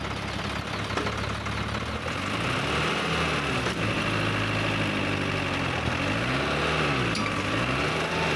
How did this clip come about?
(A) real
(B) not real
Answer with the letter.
A